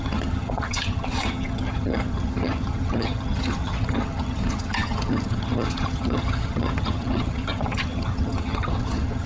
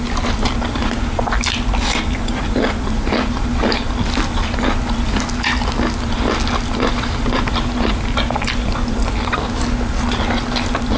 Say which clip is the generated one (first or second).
first